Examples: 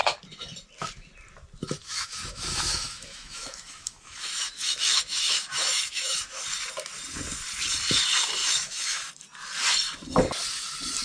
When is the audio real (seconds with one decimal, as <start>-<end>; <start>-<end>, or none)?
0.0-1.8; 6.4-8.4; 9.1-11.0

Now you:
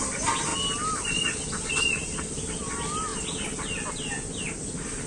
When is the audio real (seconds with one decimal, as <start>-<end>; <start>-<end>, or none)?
0.0-5.1

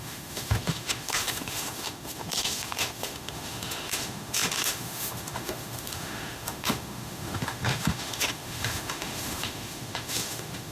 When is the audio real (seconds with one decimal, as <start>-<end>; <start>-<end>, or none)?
none

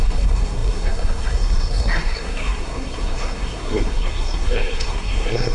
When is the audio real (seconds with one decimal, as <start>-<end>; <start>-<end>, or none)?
none

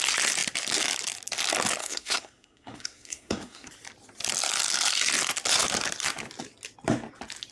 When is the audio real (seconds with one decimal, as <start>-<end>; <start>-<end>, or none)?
0.0-1.8; 3.7-7.5

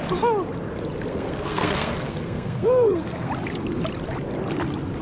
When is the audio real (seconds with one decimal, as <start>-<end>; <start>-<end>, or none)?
0.0-1.1; 3.3-5.0